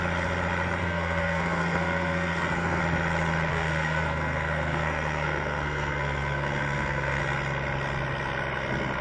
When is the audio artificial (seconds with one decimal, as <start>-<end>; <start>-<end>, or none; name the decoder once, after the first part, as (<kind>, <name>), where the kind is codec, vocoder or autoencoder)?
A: 0.8-2.8 (codec, SNAC); 3.5-7.2